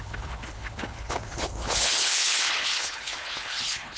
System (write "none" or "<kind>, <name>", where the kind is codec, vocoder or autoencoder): codec, HILCodec